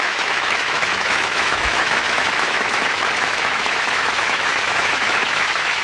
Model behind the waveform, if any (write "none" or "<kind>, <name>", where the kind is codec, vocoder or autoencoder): autoencoder, DAC-VAE